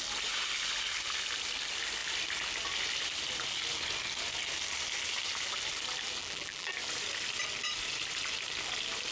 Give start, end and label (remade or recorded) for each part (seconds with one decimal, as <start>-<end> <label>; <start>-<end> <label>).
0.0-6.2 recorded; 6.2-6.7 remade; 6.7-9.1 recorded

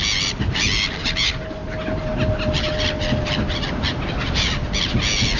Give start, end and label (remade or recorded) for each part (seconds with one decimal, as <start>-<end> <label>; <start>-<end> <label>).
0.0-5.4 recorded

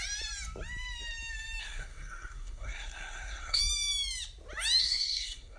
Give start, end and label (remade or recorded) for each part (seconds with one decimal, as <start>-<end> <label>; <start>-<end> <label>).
0.0-1.6 recorded; 1.6-3.6 remade; 3.6-4.8 recorded; 4.8-5.6 remade